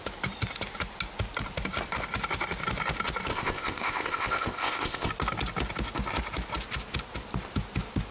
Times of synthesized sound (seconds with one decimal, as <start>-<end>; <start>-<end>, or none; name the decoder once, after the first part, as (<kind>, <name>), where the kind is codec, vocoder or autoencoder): 3.3-5.1 (codec, ZipCodec)